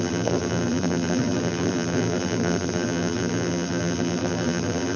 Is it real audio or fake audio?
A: fake